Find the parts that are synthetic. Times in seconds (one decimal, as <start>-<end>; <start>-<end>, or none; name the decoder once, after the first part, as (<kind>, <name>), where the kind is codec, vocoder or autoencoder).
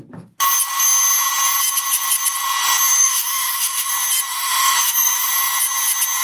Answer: 3.0-3.9 (autoencoder, DAC-VAE); 4.3-5.3